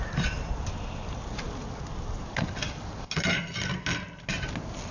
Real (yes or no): yes